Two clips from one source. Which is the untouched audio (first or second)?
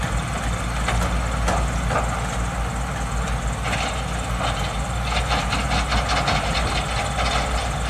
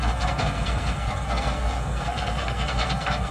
first